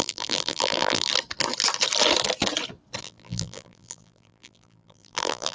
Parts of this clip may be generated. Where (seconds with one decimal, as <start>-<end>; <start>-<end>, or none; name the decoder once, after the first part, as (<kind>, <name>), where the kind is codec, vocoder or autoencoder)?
0.0-1.1 (vocoder, BigVGAN v2); 3.0-5.5

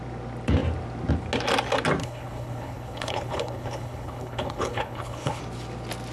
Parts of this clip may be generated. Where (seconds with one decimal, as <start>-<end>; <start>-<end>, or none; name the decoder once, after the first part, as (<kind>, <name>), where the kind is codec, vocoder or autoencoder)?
2.0-5.4 (codec, HILCodec)